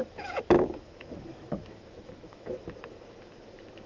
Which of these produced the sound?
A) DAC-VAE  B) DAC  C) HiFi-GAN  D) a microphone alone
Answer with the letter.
A